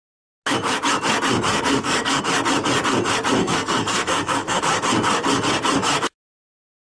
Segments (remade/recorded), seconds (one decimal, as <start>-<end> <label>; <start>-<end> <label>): 0.0-1.5 recorded; 1.5-2.2 remade; 2.2-3.4 recorded; 3.4-4.6 remade; 4.6-6.8 recorded